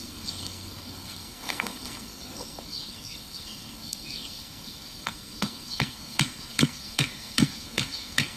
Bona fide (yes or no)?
no